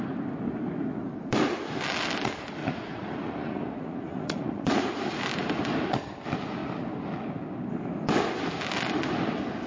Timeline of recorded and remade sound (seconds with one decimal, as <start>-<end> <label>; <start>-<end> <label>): 0.0-2.6 recorded; 2.6-5.2 remade; 5.2-9.7 recorded